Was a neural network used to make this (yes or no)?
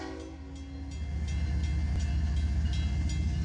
no